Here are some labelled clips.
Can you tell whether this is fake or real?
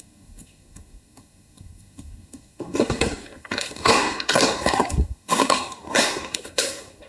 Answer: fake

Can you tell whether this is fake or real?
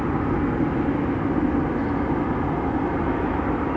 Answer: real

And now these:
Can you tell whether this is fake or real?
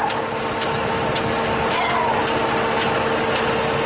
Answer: real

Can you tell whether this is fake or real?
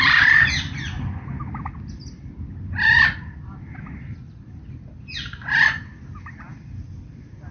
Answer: real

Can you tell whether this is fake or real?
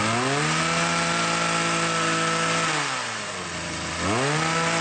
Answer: real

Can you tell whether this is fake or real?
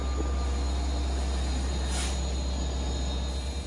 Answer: real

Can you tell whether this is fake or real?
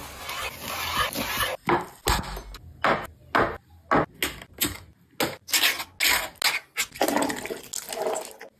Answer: real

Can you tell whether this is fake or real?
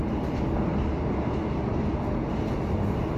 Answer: real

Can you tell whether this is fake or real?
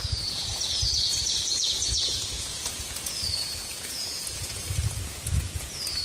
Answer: fake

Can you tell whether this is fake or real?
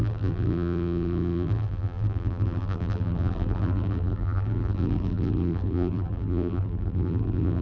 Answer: fake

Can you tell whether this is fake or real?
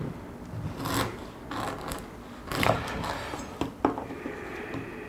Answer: real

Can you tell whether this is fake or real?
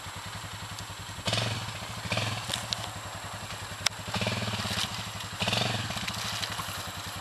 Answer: real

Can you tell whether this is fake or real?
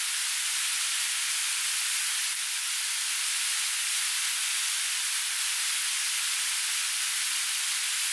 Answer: real